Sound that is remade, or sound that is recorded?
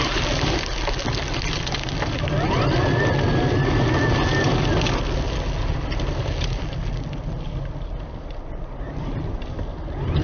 recorded